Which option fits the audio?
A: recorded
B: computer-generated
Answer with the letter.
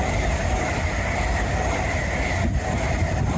A